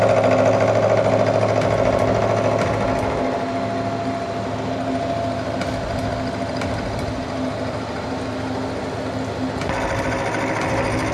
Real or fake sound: real